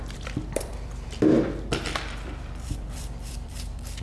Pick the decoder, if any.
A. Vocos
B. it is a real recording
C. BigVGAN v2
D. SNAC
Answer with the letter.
C